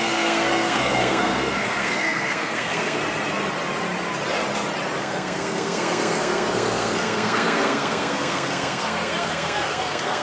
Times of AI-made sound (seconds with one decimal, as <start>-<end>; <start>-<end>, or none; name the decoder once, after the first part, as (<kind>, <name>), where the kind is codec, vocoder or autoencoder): 0.0-3.0 (codec, SNAC); 5.0-10.2

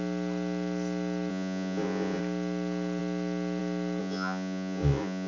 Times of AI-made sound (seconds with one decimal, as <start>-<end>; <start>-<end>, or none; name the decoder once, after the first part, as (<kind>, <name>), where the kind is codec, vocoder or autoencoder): 1.3-2.2 (vocoder, Vocos); 4.0-5.3

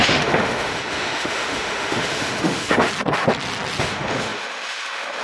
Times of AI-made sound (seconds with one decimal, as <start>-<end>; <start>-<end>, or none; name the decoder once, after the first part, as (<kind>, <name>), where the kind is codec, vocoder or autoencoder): 0.0-2.9 (autoencoder, DAC-VAE); 3.8-5.2

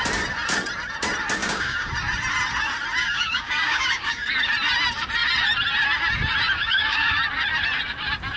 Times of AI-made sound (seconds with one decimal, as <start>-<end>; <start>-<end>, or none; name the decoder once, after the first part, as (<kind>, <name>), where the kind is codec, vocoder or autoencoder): 1.4-1.9 (codec, DAC); 3.0-4.3; 6.6-7.2